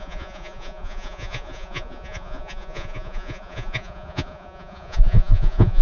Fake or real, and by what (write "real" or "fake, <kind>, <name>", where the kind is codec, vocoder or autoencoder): fake, vocoder, Vocos